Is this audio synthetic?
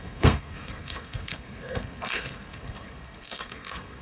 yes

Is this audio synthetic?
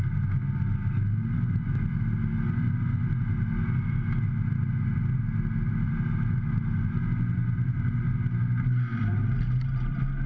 no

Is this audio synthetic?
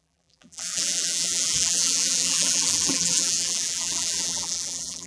yes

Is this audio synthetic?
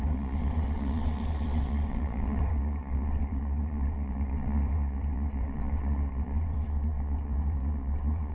yes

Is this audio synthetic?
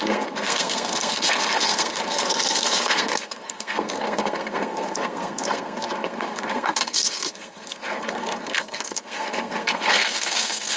yes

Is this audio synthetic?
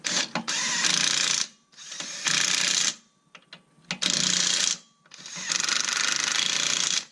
no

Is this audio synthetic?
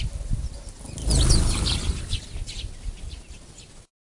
no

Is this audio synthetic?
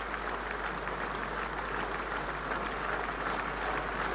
no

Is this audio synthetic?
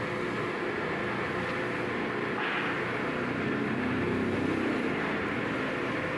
no